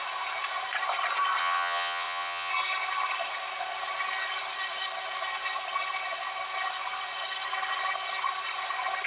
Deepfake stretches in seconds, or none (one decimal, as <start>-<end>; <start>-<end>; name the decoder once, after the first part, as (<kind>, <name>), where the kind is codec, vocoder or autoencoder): 1.4-2.5 (vocoder, WaveNeXt)